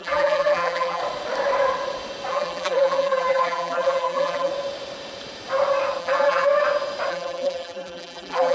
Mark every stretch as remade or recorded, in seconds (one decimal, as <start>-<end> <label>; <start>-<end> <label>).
0.0-1.0 remade; 1.0-2.3 recorded; 2.3-4.5 remade; 4.5-6.0 recorded; 6.0-6.5 remade; 6.5-7.1 recorded; 7.1-8.5 remade